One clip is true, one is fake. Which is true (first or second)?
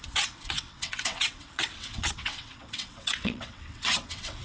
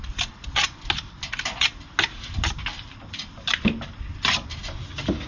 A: second